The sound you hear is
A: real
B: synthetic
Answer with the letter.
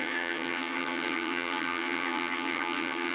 B